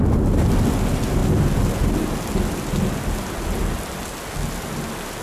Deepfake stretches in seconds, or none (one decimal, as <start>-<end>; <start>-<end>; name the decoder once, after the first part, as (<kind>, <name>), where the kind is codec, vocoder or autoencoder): none